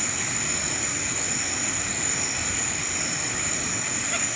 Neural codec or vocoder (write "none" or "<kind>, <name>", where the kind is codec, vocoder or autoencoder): none